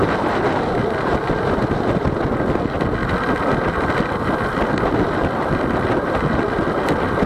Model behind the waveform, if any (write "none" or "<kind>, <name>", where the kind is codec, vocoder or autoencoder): none